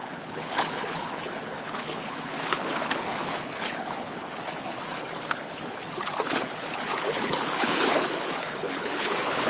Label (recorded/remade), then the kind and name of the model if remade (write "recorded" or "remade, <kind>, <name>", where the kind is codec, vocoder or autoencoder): remade, codec, HILCodec